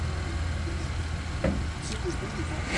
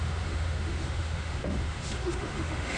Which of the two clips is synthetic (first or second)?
second